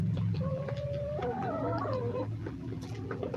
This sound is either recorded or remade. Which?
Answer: remade